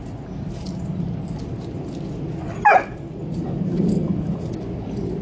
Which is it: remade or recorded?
recorded